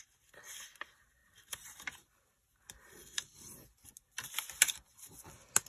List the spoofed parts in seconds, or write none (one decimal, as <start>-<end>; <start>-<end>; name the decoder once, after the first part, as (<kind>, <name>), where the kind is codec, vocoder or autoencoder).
1.2-2.2 (vocoder, BigVGAN v2); 3.0-3.7